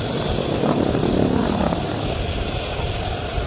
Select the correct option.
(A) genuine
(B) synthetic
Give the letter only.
A